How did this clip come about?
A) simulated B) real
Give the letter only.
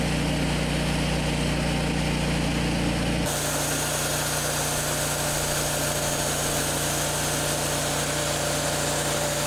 B